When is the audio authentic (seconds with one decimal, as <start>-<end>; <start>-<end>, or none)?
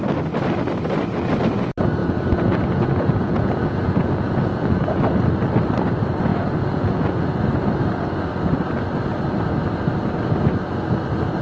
0.0-2.0; 5.0-6.3; 7.3-11.4